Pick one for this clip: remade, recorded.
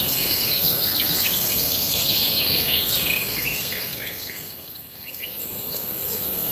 remade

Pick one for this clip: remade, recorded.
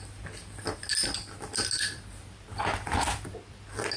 recorded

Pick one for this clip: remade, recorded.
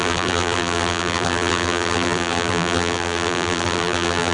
remade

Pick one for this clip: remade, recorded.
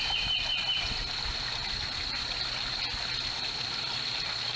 recorded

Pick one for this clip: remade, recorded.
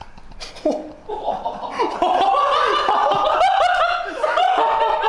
recorded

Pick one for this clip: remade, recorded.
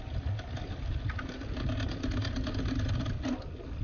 recorded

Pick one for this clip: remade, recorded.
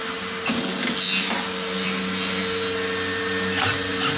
recorded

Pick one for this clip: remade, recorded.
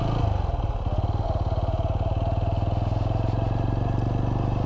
recorded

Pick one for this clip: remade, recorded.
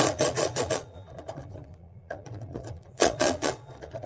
remade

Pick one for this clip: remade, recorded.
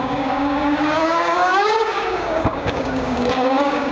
remade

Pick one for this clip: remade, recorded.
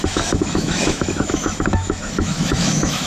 remade